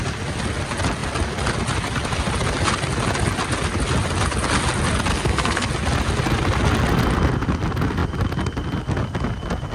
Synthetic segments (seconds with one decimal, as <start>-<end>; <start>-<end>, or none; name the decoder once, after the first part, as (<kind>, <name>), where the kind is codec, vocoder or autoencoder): 5.1-5.7 (codec, SNAC)